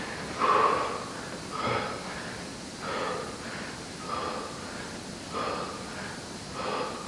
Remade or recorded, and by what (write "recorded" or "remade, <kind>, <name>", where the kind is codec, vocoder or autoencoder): recorded